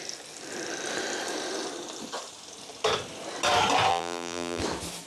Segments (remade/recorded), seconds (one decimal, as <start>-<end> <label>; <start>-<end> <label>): 0.0-3.9 recorded; 3.9-4.6 remade; 4.6-5.1 recorded